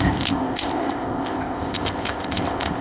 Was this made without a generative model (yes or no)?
no